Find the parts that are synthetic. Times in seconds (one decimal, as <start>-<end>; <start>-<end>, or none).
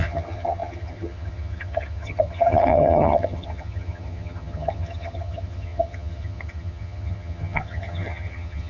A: 0.0-8.7